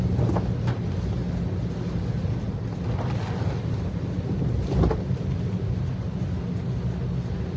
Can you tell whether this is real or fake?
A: real